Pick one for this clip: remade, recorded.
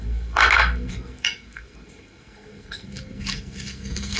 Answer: remade